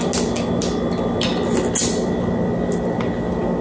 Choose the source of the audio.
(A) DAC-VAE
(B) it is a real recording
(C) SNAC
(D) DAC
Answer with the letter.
B